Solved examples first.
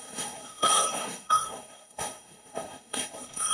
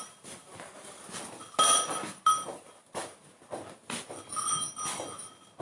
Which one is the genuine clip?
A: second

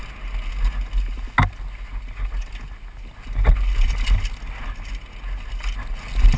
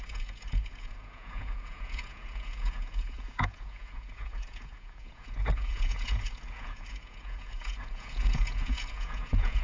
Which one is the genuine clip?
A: first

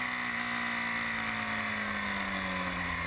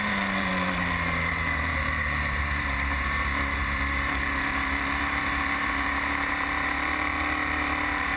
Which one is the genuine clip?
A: first